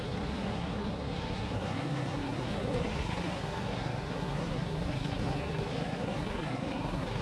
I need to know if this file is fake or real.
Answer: fake